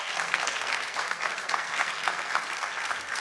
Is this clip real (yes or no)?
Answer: no